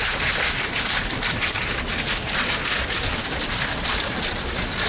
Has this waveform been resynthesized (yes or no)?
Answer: no